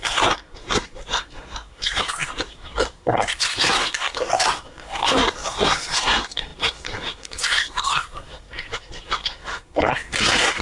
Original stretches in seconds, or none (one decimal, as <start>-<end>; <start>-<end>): none